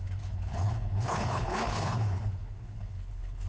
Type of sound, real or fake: fake